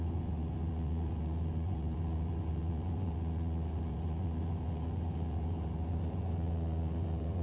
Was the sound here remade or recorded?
remade